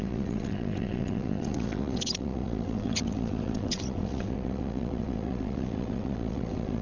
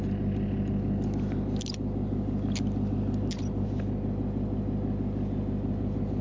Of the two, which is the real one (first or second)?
second